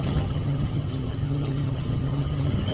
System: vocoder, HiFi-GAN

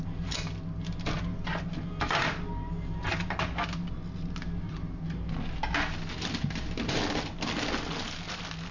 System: none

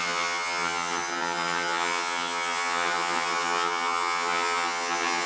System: vocoder, HiFi-GAN